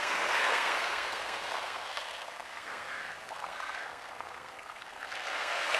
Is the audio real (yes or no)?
no